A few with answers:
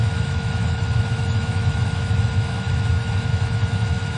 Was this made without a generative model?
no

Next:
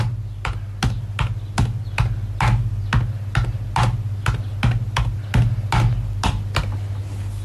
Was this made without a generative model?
yes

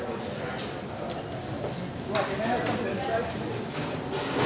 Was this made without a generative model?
yes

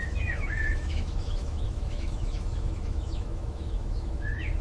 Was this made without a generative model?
no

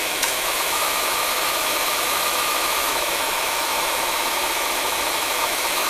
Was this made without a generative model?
no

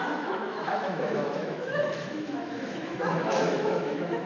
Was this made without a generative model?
no